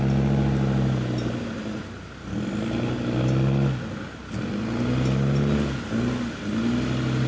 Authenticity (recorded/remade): recorded